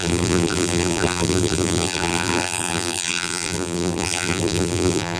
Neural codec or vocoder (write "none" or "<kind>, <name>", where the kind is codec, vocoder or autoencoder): vocoder, BigVGAN v2